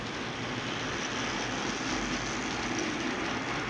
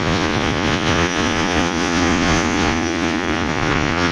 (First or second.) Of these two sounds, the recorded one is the first